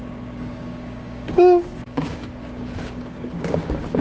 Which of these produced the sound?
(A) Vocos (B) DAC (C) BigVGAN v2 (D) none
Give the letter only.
B